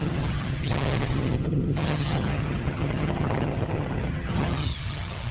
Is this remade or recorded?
remade